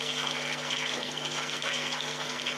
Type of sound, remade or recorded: remade